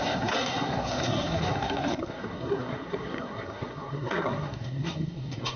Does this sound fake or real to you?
fake